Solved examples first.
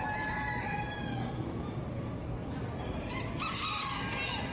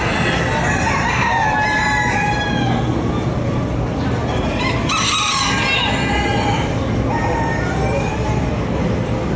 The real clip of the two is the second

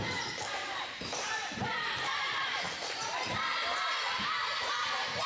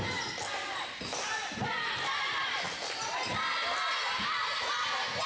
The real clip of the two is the second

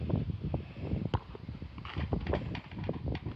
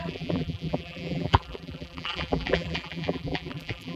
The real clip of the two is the first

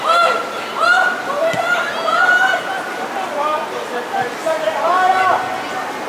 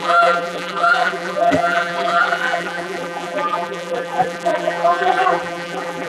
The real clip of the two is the first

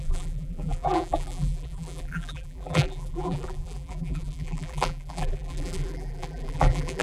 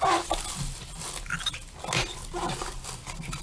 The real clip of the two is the second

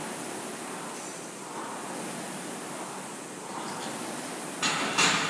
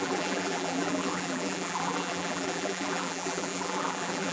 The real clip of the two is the first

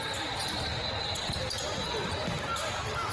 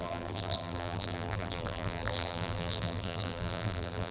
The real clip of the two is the first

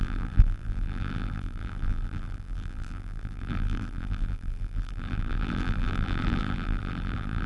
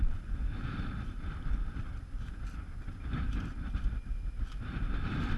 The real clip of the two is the second